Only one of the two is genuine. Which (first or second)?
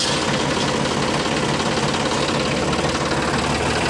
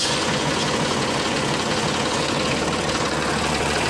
first